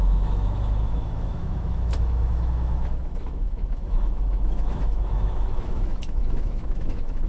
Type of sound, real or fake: fake